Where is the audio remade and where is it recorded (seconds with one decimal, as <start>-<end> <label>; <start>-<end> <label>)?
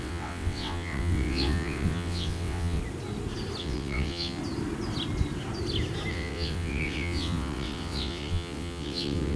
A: 0.0-2.8 remade; 2.8-3.6 recorded; 3.6-4.4 remade; 4.4-6.1 recorded; 6.1-9.4 remade